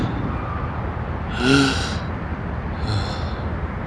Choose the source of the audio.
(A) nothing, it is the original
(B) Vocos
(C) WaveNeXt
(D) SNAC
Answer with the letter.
A